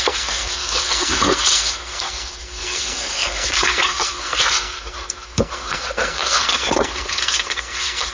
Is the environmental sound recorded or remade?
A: remade